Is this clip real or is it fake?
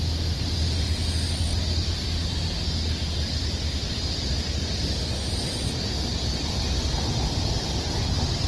real